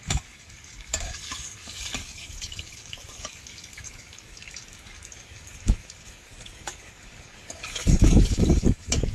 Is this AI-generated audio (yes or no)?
yes